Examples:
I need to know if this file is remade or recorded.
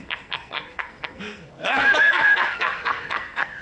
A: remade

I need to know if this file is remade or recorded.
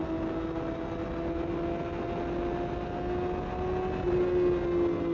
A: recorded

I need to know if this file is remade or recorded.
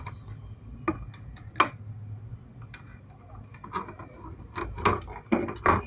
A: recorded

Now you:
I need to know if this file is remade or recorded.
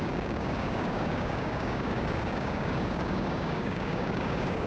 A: remade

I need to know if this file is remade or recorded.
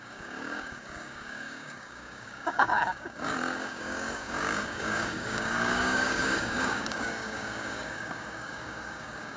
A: remade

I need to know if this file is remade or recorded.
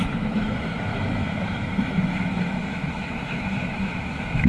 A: remade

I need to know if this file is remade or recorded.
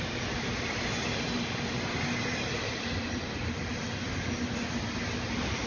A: recorded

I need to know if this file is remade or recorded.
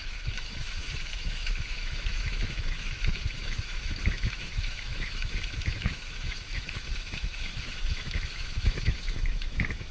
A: remade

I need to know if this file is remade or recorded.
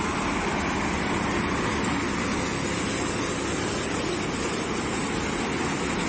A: recorded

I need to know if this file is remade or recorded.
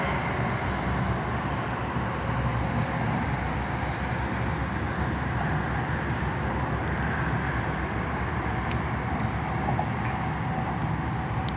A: recorded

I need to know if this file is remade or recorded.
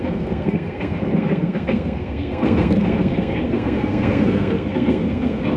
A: remade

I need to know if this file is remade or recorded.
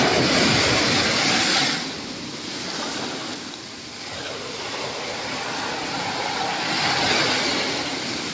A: recorded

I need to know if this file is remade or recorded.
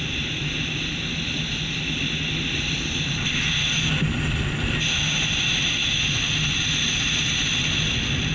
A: recorded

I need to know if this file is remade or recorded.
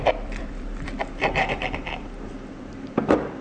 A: remade